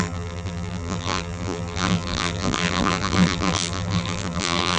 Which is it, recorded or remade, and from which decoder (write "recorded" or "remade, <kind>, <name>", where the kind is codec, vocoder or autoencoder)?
remade, vocoder, BigVGAN v2